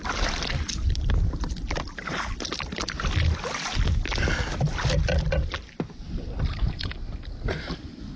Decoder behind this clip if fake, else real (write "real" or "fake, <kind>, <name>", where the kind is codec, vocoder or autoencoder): real